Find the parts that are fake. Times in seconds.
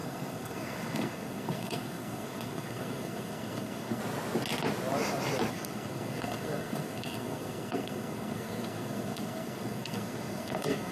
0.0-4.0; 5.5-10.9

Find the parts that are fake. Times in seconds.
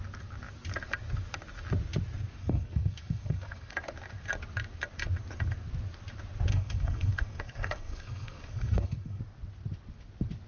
2.4-3.7; 6.5-9.2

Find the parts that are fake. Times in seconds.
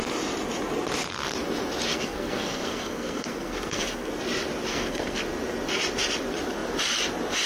1.9-4.1; 4.7-5.2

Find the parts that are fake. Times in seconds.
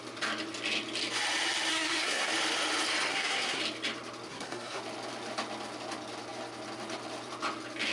1.7-2.3; 3.1-3.6; 4.3-4.8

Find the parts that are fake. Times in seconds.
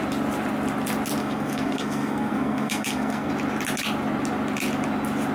1.2-3.3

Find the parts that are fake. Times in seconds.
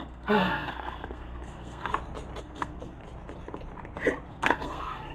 0.0-1.9; 2.4-3.0; 4.3-5.1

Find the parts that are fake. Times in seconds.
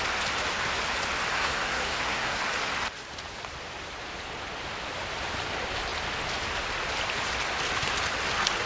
1.3-2.4